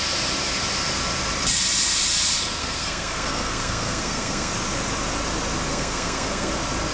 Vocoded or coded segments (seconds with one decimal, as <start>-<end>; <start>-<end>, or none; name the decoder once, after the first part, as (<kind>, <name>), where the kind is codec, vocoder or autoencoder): 2.6-4.5 (codec, SNAC); 5.7-6.5